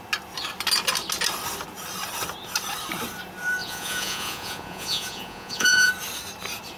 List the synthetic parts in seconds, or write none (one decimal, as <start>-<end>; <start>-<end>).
3.6-5.9